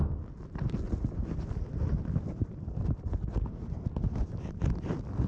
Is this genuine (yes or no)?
yes